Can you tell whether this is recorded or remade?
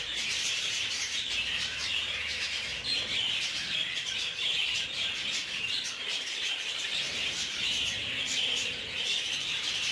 remade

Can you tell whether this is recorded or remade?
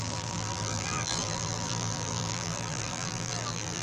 remade